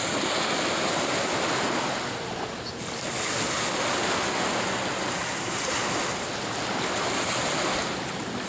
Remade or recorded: recorded